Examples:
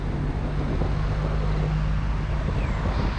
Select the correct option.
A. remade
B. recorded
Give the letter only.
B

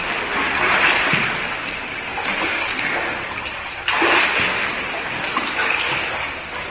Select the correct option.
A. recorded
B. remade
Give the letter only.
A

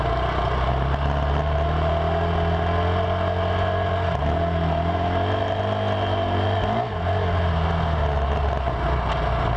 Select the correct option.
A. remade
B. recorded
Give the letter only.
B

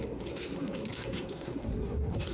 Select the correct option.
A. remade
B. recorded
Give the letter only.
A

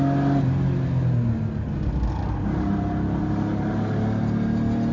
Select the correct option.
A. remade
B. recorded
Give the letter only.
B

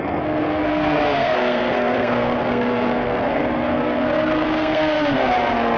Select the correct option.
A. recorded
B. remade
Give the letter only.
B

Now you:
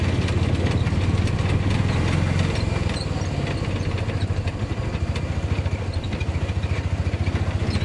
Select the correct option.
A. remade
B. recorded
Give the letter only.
B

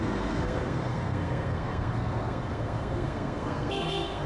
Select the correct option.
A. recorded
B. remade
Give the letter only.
B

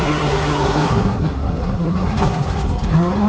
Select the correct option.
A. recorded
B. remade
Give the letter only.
B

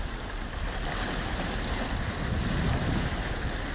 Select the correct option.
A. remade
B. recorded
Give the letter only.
B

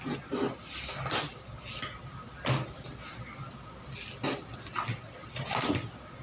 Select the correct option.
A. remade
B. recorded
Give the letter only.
B